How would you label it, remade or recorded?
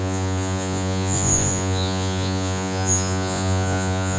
remade